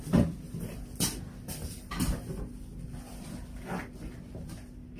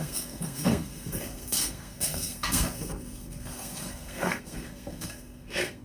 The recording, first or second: first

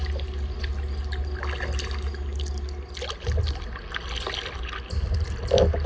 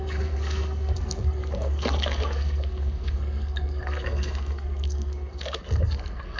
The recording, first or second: first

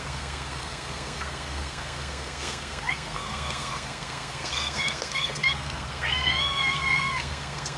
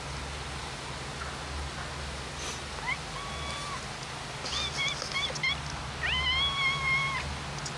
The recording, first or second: second